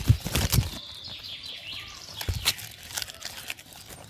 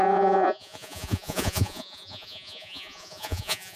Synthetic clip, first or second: second